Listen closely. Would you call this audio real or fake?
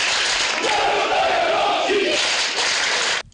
real